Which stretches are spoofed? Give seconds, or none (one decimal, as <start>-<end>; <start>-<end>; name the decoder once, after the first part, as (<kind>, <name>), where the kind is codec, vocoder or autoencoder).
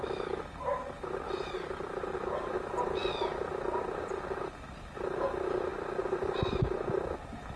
none